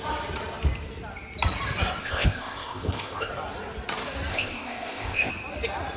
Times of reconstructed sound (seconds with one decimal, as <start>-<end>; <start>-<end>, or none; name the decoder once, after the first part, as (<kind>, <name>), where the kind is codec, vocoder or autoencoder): 2.0-3.3 (codec, ZipCodec); 4.3-5.3